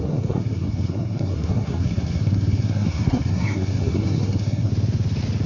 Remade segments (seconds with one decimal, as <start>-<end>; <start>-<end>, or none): 0.0-4.7